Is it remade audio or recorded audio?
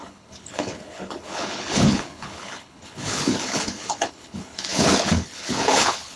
remade